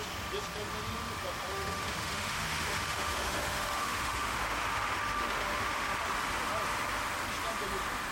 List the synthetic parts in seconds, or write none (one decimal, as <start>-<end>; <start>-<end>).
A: 1.5-5.9